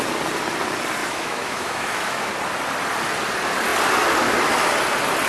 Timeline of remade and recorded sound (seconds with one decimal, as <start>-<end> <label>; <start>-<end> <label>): 0.0-1.0 recorded; 1.0-2.3 remade; 2.3-5.3 recorded